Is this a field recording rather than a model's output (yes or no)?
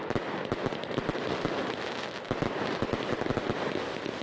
yes